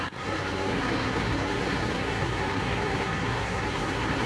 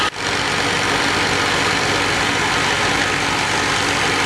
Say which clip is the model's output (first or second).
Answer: first